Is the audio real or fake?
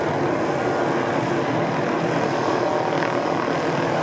real